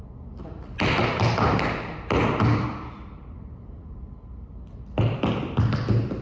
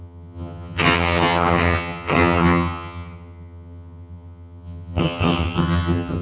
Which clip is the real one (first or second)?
first